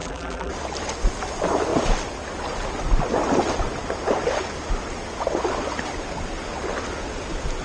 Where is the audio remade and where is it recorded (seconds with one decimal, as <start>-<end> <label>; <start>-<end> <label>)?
0.0-0.5 remade; 0.5-7.6 recorded